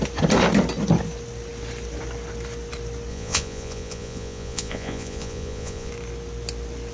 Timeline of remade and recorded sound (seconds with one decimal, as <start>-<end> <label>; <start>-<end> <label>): 0.0-3.1 recorded; 3.1-5.9 remade; 5.9-6.9 recorded

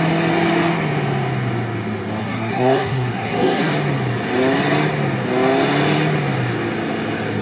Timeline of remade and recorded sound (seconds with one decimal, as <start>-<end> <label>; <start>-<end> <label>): 0.0-2.2 recorded; 2.2-3.7 remade; 3.7-7.4 recorded